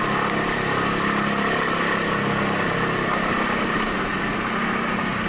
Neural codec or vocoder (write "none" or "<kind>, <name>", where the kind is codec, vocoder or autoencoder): none